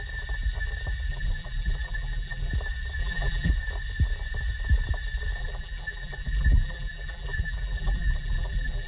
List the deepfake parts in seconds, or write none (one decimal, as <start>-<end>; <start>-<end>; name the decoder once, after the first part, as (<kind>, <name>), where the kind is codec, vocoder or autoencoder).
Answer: 1.1-2.5 (vocoder, BigVGAN v2); 3.0-3.5; 5.4-8.9